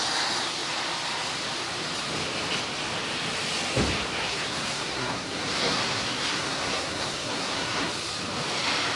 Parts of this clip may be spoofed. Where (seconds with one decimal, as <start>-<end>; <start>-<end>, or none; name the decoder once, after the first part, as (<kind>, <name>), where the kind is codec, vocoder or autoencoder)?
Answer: 4.2-7.9 (codec, SNAC)